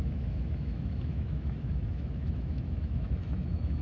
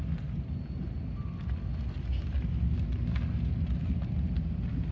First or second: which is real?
second